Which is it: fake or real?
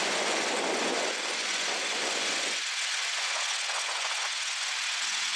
fake